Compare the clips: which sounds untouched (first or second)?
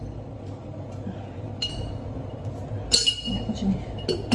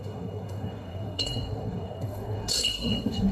first